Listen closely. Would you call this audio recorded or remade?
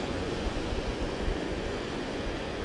remade